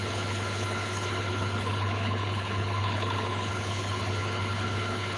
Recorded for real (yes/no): no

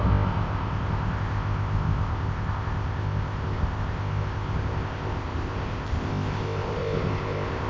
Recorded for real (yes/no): no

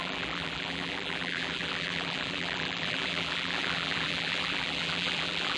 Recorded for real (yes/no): no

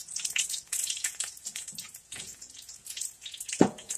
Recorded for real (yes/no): no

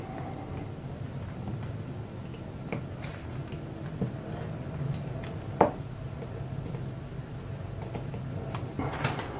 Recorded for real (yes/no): no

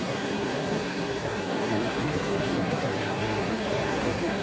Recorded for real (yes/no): no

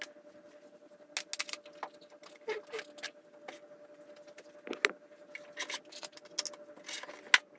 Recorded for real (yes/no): yes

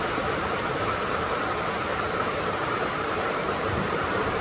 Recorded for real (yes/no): no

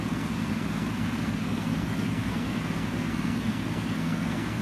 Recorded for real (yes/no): no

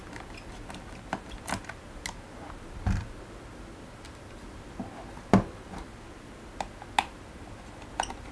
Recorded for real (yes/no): yes